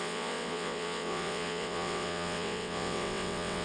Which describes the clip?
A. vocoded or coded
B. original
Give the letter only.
A